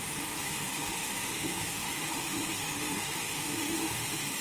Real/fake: fake